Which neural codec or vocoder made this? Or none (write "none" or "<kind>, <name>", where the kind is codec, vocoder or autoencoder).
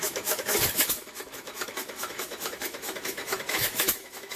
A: autoencoder, DAC-VAE